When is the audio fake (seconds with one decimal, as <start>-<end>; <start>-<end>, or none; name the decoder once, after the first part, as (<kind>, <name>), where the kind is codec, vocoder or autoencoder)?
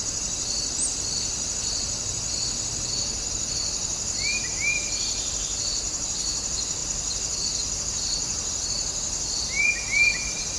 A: none